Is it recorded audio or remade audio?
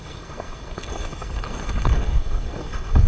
remade